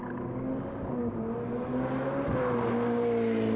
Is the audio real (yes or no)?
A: yes